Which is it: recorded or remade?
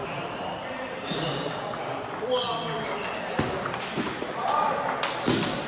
recorded